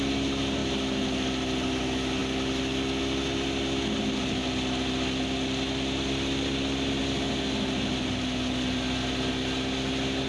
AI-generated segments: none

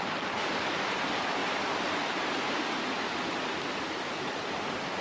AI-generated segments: none

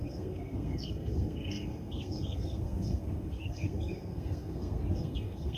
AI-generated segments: 0.0-5.6 (codec, SNAC)

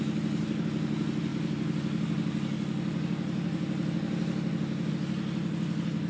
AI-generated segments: none